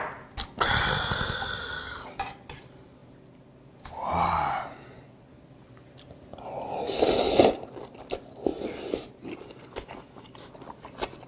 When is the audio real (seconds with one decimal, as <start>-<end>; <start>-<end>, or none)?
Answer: 0.0-11.3